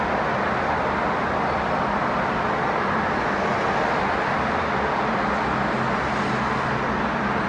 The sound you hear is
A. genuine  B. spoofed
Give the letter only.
A